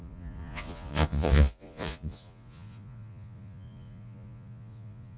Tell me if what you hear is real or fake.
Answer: fake